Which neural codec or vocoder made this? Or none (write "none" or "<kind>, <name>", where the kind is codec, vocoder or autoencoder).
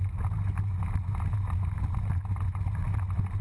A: none